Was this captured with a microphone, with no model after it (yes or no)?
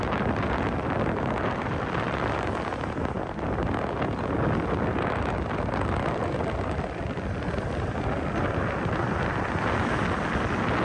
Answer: yes